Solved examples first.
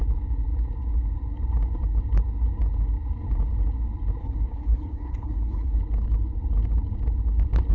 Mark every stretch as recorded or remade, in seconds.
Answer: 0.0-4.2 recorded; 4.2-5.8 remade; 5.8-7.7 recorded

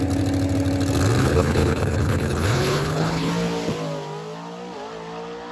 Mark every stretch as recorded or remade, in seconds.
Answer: 0.0-1.2 recorded; 1.2-3.3 remade; 3.3-5.5 recorded